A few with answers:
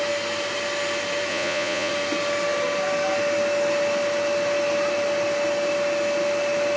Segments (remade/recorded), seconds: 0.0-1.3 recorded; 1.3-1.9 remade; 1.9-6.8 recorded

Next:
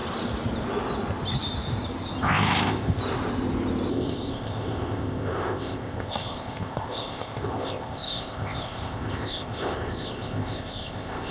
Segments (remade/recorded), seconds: 0.0-2.2 recorded; 2.2-3.0 remade; 3.0-3.9 recorded; 3.9-11.3 remade

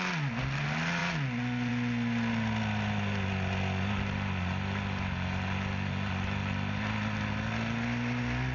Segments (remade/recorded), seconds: 0.0-8.5 recorded